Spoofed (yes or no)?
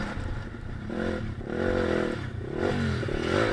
no